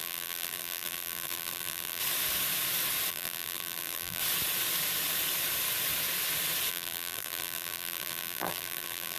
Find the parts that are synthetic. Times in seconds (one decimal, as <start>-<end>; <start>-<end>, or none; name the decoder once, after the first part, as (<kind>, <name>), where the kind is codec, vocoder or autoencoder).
0.0-2.0 (vocoder, BigVGAN v2); 3.1-4.2; 6.7-9.2